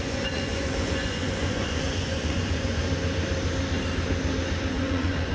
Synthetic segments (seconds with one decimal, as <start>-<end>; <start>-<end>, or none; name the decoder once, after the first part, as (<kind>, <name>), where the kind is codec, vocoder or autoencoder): 0.0-2.8 (vocoder, Vocos); 4.7-5.3